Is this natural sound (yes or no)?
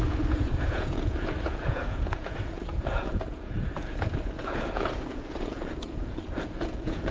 no